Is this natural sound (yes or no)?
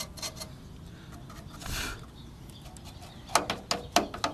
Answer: yes